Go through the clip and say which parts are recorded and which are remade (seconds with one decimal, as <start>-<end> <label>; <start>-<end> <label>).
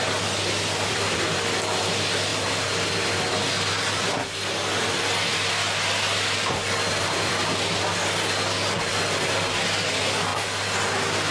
0.0-10.3 remade; 10.3-11.3 recorded